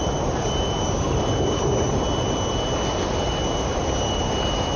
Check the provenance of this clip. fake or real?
real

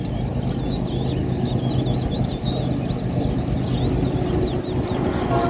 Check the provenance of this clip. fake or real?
real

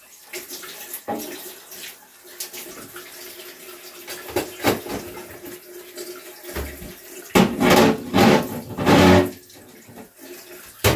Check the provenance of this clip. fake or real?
real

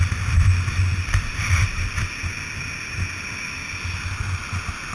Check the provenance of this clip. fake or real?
real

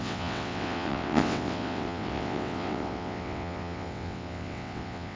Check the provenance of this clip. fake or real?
fake